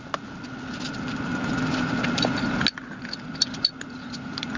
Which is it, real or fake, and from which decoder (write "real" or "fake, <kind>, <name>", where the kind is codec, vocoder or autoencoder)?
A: real